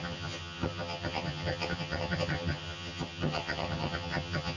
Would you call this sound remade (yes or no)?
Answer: yes